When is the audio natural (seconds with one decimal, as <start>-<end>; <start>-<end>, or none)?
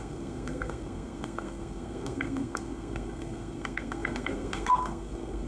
none